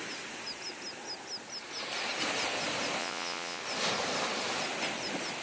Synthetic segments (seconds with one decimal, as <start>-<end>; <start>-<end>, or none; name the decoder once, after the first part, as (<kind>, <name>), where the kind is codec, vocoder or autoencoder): 3.0-3.6 (vocoder, Vocos)